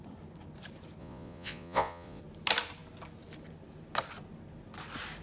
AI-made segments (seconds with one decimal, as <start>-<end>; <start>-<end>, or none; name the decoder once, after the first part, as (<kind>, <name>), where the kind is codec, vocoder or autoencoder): 1.0-2.2 (vocoder, Vocos)